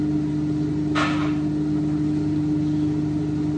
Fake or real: real